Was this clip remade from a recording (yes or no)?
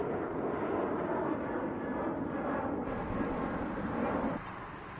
no